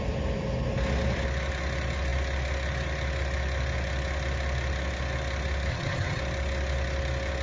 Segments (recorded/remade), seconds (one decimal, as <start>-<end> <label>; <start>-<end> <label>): 0.0-5.7 recorded; 5.7-6.2 remade; 6.2-7.4 recorded